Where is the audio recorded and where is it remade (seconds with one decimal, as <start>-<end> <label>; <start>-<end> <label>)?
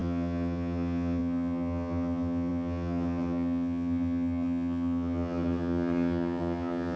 0.0-7.0 remade